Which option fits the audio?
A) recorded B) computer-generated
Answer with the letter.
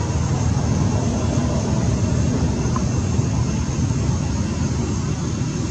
A